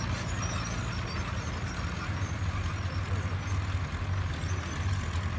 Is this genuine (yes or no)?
yes